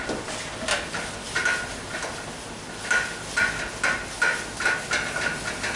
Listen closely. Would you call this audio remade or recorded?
recorded